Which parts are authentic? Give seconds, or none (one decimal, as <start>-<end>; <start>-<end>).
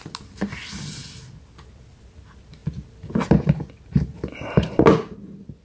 0.0-5.6